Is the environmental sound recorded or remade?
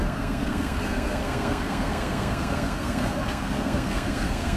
remade